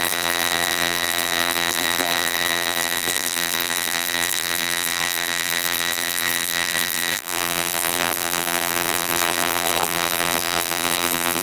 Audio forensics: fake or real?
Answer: fake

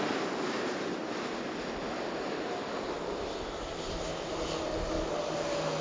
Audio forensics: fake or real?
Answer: real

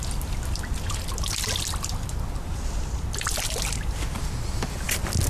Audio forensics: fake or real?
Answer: real